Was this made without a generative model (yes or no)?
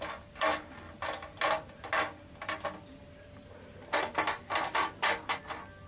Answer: yes